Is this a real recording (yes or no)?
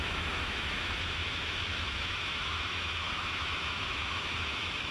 no